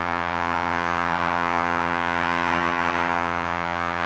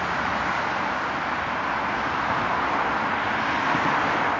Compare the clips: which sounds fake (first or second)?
first